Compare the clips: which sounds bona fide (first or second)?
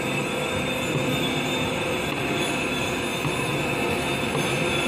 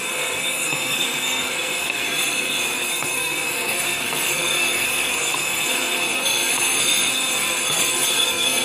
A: first